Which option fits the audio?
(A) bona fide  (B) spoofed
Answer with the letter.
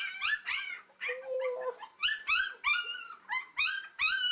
B